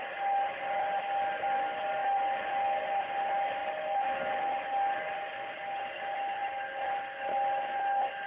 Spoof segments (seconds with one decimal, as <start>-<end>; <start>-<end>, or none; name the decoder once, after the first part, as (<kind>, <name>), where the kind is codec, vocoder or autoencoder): none